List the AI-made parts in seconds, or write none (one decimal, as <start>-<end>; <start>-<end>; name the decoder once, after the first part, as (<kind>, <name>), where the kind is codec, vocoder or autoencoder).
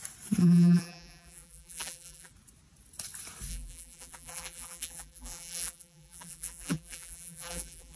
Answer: 0.4-2.3 (vocoder, BigVGAN v2); 3.5-8.0